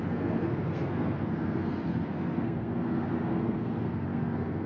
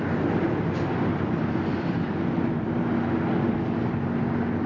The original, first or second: second